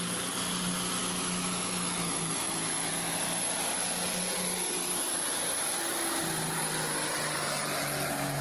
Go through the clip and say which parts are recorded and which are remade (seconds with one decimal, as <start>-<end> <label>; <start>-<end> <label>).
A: 0.0-1.0 recorded; 1.0-2.9 remade; 2.9-8.4 recorded